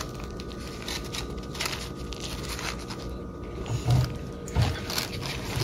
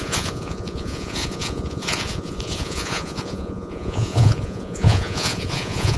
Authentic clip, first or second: first